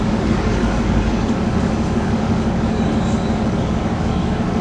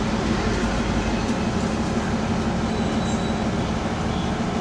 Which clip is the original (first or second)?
second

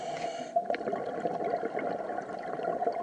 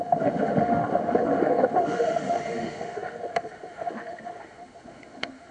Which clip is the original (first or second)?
first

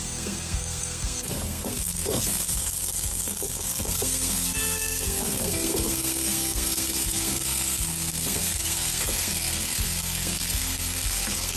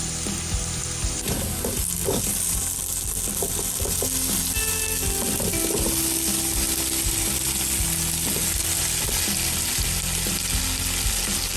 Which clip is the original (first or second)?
second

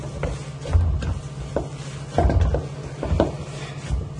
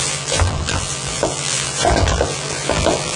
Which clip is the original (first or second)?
first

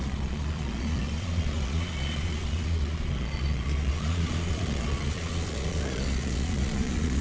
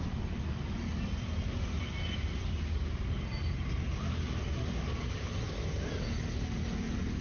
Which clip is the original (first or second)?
second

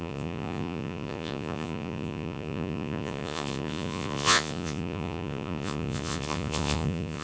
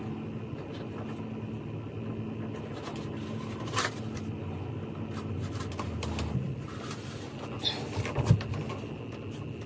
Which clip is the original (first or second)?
second